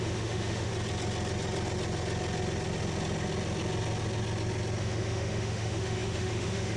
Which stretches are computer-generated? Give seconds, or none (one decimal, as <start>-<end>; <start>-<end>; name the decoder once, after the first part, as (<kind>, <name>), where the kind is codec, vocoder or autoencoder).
0.0-0.7 (autoencoder, DAC-VAE); 4.8-6.8